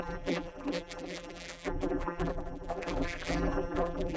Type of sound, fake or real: fake